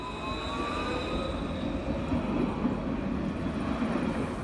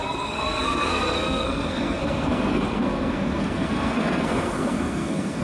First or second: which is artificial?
second